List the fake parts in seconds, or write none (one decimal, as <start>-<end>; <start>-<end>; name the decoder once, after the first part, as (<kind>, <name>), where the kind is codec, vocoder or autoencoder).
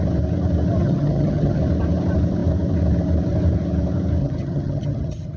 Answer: 0.8-1.6 (vocoder, HiFi-GAN); 4.2-5.4